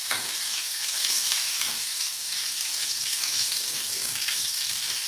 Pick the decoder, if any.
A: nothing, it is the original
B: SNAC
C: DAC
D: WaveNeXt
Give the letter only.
C